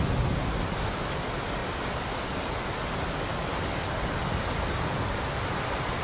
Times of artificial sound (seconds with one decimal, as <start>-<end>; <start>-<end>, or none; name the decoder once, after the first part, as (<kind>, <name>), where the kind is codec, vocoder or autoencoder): none